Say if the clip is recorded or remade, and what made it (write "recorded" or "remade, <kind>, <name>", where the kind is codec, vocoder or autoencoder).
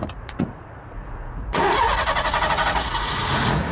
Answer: remade, vocoder, Vocos